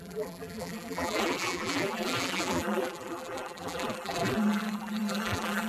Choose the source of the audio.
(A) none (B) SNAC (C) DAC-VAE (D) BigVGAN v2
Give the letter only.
D